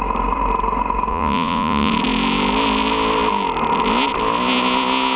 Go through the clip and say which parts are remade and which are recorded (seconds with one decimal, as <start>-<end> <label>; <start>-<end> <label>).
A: 0.0-1.1 recorded; 1.1-1.9 remade; 1.9-5.2 recorded

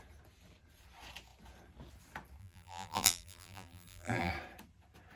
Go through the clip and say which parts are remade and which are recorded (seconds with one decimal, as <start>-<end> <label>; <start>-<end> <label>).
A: 0.0-2.4 recorded; 2.4-4.3 remade; 4.3-5.2 recorded

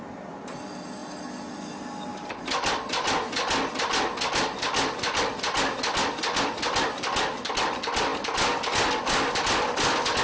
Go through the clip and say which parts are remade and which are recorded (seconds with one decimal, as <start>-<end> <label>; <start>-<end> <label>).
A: 0.0-10.2 recorded